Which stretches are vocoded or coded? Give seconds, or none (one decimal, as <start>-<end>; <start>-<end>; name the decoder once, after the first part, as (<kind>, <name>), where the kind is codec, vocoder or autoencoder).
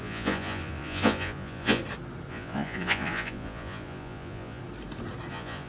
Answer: 0.0-1.8 (vocoder, Vocos); 2.3-4.6; 5.3-5.7